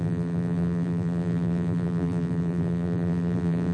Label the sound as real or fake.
fake